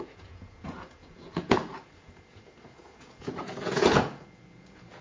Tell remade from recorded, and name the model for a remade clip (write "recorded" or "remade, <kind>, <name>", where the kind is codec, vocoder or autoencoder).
remade, vocoder, Vocos